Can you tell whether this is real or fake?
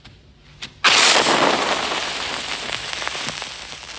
real